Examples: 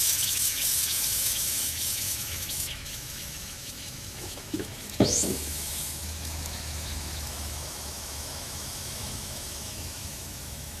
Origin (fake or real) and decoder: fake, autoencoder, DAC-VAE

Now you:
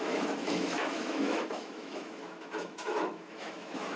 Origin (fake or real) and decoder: fake, autoencoder, DAC-VAE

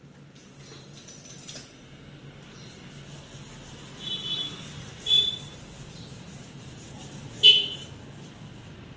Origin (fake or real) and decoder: real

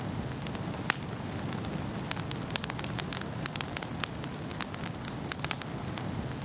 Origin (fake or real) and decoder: real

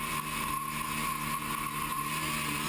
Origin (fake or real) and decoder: real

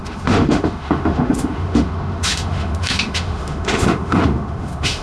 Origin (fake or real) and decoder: fake, autoencoder, DAC-VAE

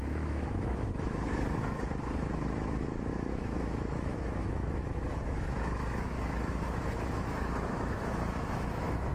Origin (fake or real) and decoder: fake, autoencoder, DAC-VAE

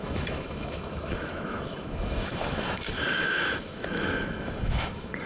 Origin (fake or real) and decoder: fake, autoencoder, DAC-VAE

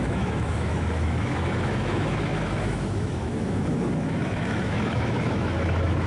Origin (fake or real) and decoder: fake, autoencoder, DAC-VAE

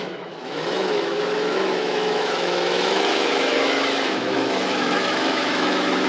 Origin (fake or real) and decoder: fake, autoencoder, DAC-VAE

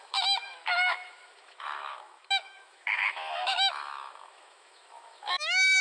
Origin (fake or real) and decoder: fake, autoencoder, DAC-VAE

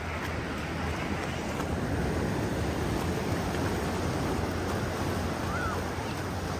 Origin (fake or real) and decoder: real